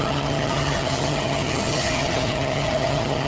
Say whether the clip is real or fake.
fake